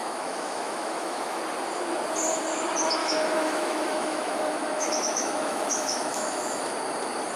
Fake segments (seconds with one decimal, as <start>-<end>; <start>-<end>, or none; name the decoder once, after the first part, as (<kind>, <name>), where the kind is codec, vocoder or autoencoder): 0.0-1.4 (autoencoder, DAC-VAE); 3.0-6.6